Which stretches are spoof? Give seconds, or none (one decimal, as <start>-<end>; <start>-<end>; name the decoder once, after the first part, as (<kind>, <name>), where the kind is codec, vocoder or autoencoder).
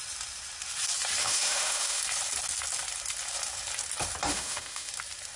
1.2-2.0 (autoencoder, DAC-VAE); 4.3-4.9